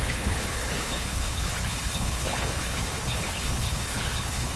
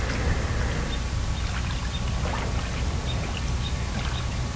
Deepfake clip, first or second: first